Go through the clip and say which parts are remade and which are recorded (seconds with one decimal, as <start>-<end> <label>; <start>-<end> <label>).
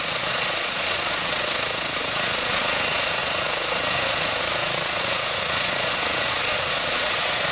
0.0-7.5 remade